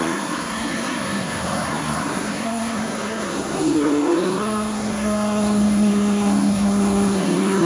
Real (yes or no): no